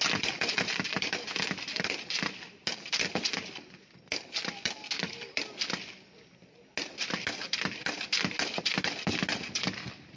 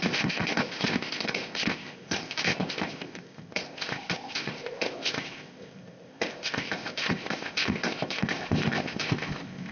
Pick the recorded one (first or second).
first